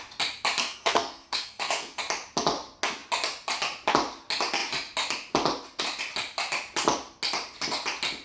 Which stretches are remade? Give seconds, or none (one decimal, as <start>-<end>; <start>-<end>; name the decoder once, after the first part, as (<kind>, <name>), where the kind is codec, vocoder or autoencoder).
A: 0.6-2.0 (codec, SNAC)